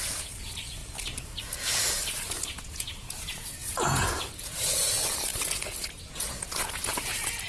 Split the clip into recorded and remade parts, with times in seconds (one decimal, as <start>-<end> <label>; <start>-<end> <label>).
0.0-0.8 remade; 0.8-1.4 recorded; 1.4-7.5 remade